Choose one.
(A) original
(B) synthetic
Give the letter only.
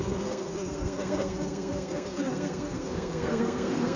B